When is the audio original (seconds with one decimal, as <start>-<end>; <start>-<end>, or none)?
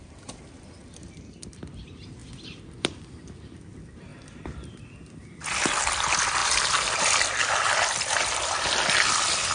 0.8-1.7; 4.1-5.3; 6.4-7.7